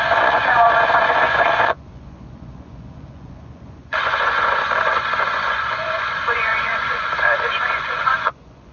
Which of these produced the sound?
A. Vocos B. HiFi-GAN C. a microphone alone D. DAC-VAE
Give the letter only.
A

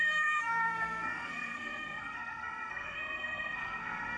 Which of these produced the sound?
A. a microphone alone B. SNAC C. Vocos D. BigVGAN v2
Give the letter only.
B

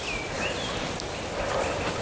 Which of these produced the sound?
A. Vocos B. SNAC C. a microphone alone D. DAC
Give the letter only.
C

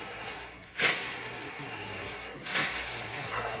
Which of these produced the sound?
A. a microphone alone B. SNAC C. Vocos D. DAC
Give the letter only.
B